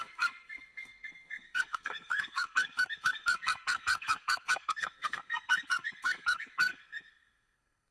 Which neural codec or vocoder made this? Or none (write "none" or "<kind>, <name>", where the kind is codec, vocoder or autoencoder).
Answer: codec, SNAC